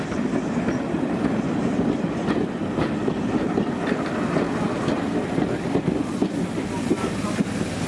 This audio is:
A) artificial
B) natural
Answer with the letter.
B